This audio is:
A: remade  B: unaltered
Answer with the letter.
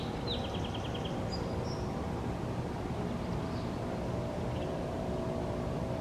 B